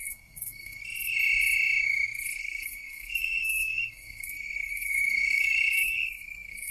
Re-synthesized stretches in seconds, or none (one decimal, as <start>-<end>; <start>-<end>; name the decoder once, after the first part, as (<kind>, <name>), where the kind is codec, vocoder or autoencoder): 0.0-0.8 (codec, SNAC); 2.4-6.7